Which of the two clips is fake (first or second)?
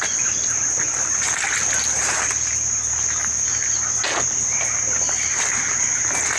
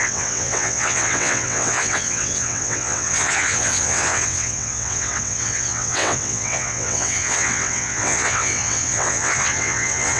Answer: second